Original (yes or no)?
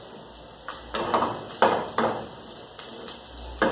yes